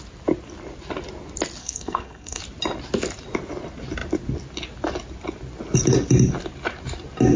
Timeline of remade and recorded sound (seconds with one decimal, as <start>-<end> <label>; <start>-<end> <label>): 0.0-1.6 recorded; 1.6-2.4 remade; 2.4-7.4 recorded

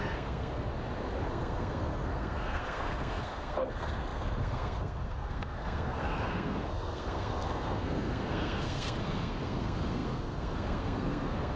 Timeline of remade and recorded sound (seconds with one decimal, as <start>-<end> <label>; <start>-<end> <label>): 0.0-0.7 remade; 0.7-1.3 recorded; 1.3-11.6 remade

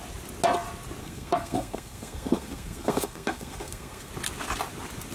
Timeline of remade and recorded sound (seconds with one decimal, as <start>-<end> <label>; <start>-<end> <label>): 0.0-1.0 recorded; 1.0-4.1 remade; 4.1-5.1 recorded

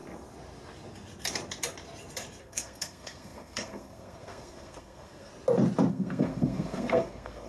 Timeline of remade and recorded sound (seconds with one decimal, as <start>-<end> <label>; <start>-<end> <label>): 0.0-2.4 recorded; 2.4-5.3 remade; 5.3-5.9 recorded; 5.9-7.5 remade

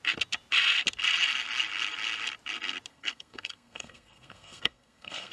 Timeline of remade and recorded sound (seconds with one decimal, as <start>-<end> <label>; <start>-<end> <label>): 0.0-2.9 recorded; 2.9-5.3 remade

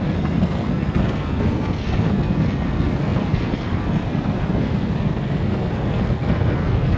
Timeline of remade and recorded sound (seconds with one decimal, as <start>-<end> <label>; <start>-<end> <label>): 0.0-7.0 remade